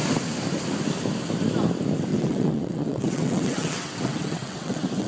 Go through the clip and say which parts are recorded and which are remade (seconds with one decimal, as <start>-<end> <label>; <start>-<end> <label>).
0.0-2.1 recorded; 2.1-5.1 remade